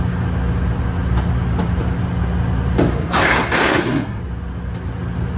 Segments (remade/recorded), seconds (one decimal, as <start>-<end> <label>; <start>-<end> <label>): 0.0-2.9 recorded; 2.9-4.2 remade; 4.2-5.4 recorded

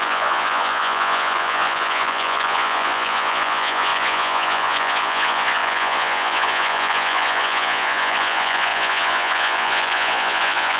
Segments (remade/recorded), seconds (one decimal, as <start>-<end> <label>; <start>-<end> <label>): 0.0-10.8 remade

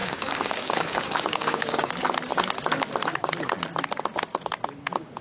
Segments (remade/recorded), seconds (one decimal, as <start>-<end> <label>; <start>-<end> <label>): 0.0-1.9 remade; 1.9-5.2 recorded

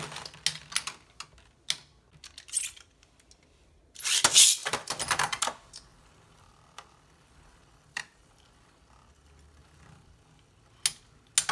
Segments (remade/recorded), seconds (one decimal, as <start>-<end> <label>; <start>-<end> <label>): 0.0-4.6 recorded; 4.6-5.4 remade; 5.4-5.9 recorded; 5.9-8.2 remade; 8.2-11.5 recorded

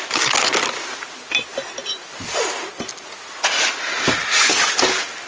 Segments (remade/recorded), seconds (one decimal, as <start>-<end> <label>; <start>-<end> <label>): 0.0-5.3 recorded

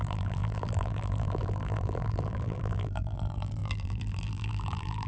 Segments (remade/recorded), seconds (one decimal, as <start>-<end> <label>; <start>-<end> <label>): 0.0-5.1 remade

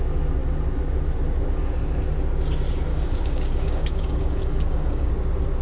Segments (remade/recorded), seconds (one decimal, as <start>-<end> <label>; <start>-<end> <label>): 0.0-2.9 recorded; 2.9-5.1 remade; 5.1-5.6 recorded

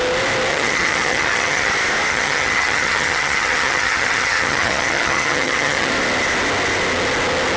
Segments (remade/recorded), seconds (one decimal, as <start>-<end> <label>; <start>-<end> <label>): 0.0-0.5 recorded; 0.5-1.7 remade; 1.7-2.1 recorded; 2.1-5.9 remade; 5.9-7.6 recorded